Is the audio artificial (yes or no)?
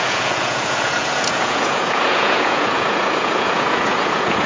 yes